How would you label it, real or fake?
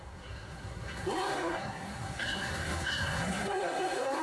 fake